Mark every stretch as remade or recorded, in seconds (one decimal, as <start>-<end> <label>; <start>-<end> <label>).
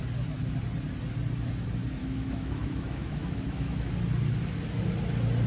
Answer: 0.0-2.0 recorded; 2.0-3.9 remade; 3.9-5.5 recorded